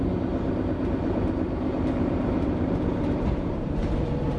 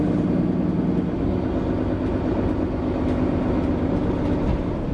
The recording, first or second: second